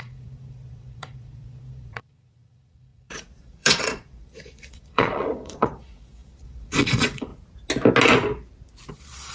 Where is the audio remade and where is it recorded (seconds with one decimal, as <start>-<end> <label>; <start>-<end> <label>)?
0.0-7.3 remade; 7.3-8.9 recorded; 8.9-9.3 remade